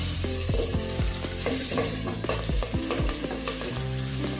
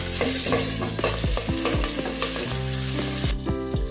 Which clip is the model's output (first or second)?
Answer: first